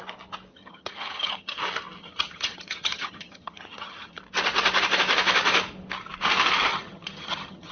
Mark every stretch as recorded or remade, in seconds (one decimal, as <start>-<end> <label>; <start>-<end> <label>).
0.0-0.5 recorded; 0.5-1.6 remade; 1.6-2.0 recorded; 2.0-4.2 remade; 4.2-6.7 recorded; 6.7-7.7 remade

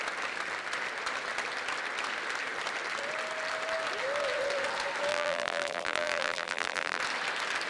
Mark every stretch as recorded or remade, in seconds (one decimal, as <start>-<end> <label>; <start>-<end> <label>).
0.0-5.1 recorded; 5.1-7.0 remade; 7.0-7.7 recorded